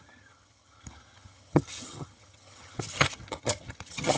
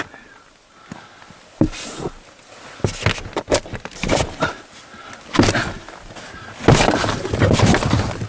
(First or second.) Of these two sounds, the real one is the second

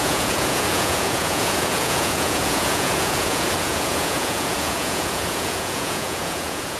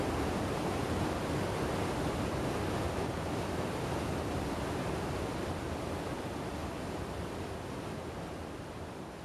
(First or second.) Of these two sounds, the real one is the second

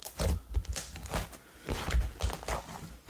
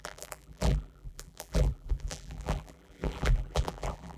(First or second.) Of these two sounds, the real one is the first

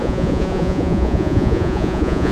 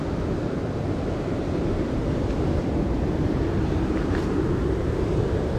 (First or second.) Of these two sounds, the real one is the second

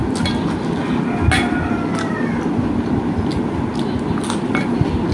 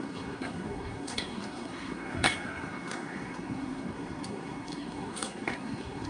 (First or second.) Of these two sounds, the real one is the first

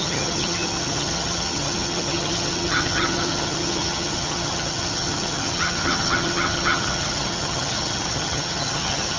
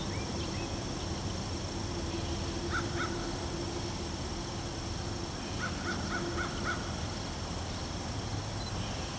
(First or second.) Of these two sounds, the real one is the second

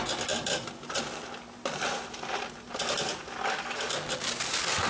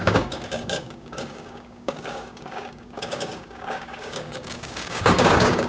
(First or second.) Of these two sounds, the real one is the first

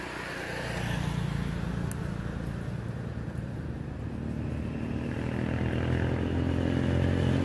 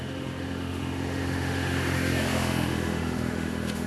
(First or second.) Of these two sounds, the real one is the first